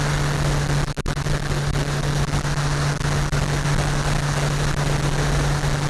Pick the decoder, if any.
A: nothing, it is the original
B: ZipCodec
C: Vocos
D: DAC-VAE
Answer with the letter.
A